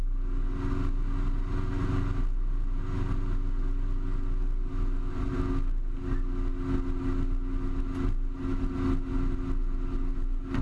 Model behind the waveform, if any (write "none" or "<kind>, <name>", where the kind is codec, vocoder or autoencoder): none